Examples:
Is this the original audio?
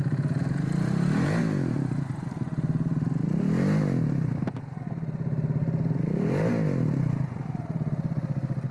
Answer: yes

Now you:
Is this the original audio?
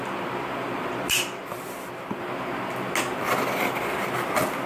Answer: yes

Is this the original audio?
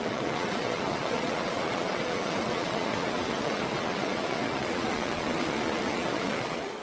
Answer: no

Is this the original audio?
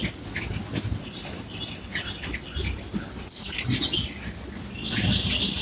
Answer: yes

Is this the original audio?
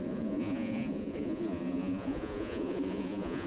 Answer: no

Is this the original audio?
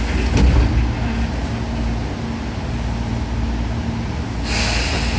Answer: yes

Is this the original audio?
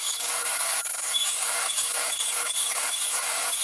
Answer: no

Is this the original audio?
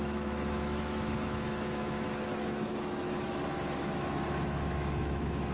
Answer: no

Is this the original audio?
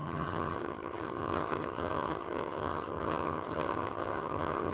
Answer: no